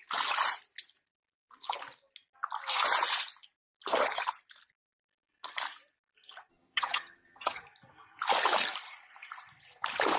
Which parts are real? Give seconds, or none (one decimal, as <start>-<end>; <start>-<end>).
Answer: 0.0-6.5; 7.6-10.2